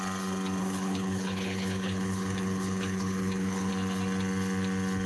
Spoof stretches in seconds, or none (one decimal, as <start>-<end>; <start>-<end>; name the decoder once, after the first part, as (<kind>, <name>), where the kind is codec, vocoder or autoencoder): 0.6-3.7 (codec, HILCodec)